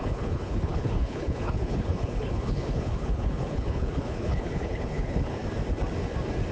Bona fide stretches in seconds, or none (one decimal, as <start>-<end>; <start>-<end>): 5.4-6.5